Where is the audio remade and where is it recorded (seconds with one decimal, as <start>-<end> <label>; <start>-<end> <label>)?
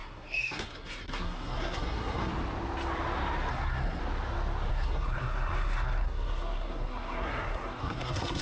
0.0-2.3 remade; 2.3-3.5 recorded; 3.5-4.0 remade; 4.0-4.7 recorded; 4.7-8.4 remade